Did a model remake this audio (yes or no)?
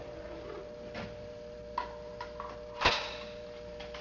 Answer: no